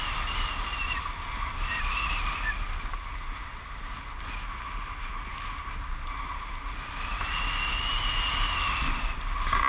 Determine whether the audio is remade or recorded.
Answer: recorded